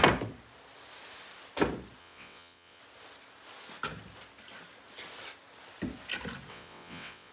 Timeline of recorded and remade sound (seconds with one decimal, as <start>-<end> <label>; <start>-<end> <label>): 0.0-2.0 recorded; 2.0-2.8 remade; 2.8-6.5 recorded; 6.5-7.3 remade